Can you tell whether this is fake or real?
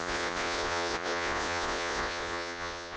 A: fake